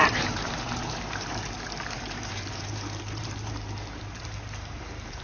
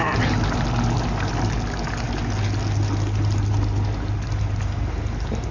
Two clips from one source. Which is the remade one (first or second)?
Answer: first